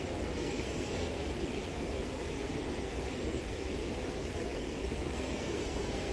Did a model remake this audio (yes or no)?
yes